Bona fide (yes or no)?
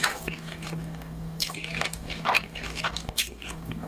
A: no